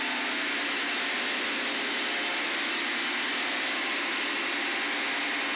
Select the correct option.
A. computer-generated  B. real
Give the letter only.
B